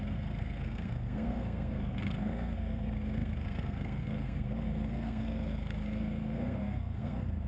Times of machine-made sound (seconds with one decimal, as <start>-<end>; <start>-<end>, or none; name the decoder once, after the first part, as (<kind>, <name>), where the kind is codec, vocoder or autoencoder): 0.0-7.5 (codec, SNAC)